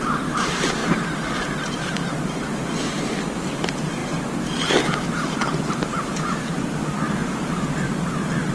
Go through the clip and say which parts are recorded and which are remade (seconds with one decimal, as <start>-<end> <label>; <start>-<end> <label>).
0.0-0.8 remade; 0.8-2.8 recorded; 2.8-4.0 remade; 4.0-5.7 recorded; 5.7-8.5 remade